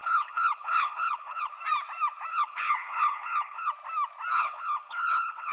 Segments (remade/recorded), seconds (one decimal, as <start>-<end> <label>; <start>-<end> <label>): 0.0-1.5 remade; 1.5-2.3 recorded; 2.3-3.7 remade; 3.7-4.3 recorded; 4.3-5.5 remade